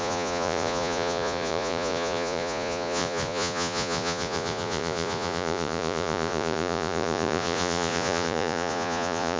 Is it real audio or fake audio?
fake